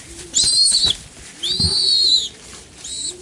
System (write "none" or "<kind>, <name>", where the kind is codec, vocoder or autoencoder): none